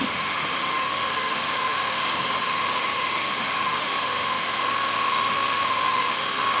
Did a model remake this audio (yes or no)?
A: yes